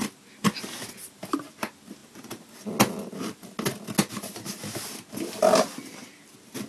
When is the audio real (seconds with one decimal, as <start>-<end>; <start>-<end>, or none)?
0.0-2.0; 2.5-6.7